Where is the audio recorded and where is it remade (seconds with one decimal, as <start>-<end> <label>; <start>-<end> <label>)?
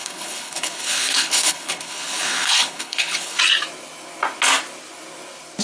0.0-3.4 remade; 3.4-5.6 recorded